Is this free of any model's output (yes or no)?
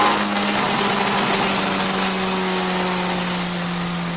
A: yes